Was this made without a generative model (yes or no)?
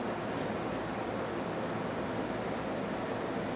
yes